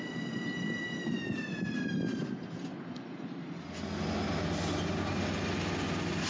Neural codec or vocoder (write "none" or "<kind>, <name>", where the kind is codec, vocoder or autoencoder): none